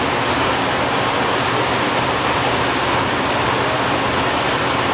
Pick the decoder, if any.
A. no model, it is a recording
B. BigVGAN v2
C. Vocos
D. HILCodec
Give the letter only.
A